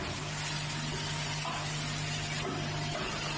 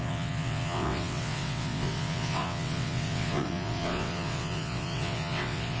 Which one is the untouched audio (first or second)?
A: first